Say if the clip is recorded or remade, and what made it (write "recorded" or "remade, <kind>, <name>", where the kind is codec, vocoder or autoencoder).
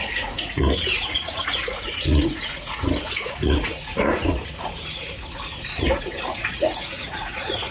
remade, vocoder, Vocos